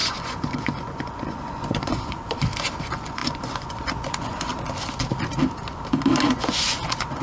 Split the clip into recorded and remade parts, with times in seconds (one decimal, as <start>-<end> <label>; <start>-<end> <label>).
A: 0.0-2.2 remade; 2.2-2.8 recorded; 2.8-4.5 remade; 4.5-6.3 recorded; 6.3-7.2 remade